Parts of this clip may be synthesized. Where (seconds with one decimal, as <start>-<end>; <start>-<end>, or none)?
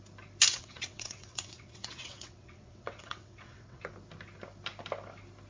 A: 0.5-3.8